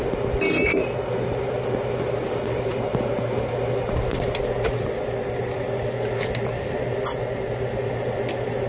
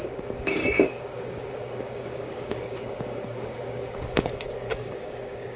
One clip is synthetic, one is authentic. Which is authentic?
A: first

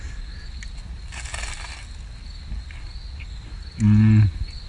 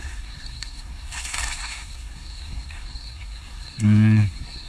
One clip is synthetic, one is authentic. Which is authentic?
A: first